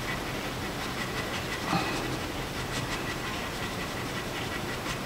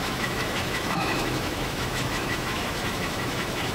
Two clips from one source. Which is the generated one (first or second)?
second